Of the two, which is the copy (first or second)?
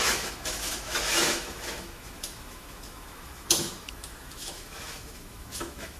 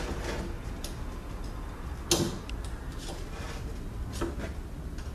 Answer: first